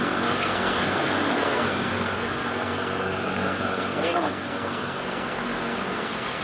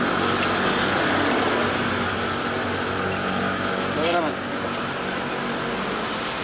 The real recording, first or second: second